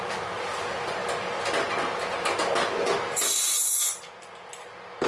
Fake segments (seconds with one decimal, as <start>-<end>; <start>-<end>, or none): none